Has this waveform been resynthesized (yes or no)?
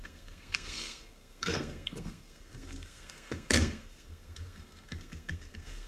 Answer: yes